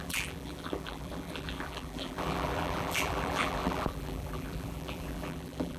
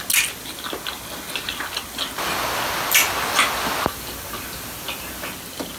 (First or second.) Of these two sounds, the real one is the second